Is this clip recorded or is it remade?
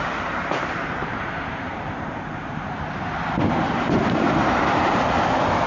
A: remade